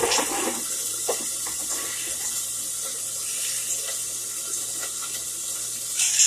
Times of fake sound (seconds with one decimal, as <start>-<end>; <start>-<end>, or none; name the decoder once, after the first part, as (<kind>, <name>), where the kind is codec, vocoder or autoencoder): 0.9-2.4 (vocoder, BigVGAN v2)